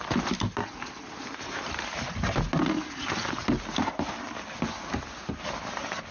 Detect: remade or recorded recorded